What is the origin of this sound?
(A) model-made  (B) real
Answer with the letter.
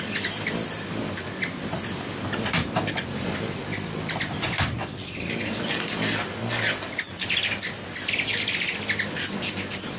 B